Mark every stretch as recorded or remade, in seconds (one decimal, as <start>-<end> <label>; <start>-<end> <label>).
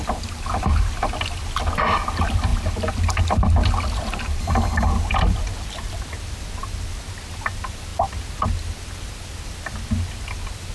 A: 0.0-10.7 recorded